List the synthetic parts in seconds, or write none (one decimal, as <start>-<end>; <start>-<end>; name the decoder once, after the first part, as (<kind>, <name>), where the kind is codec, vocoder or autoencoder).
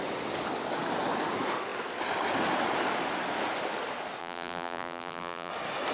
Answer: 4.2-5.5 (vocoder, BigVGAN v2)